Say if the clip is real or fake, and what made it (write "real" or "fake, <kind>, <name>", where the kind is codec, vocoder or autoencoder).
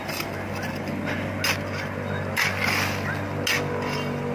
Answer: real